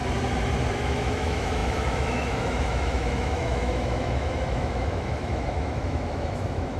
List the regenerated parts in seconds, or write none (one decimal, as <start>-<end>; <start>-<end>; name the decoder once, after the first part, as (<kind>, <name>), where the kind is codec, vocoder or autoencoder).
0.7-6.8 (autoencoder, DAC-VAE)